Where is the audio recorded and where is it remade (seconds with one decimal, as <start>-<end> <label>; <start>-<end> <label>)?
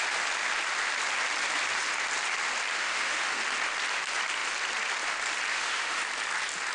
0.0-2.8 recorded; 2.8-3.4 remade; 3.4-5.5 recorded; 5.5-6.0 remade; 6.0-6.7 recorded